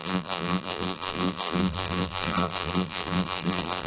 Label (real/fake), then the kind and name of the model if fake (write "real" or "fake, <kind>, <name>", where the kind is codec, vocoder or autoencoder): fake, vocoder, BigVGAN v2